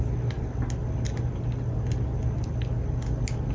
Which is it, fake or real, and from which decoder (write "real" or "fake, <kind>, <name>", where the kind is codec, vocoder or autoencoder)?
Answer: real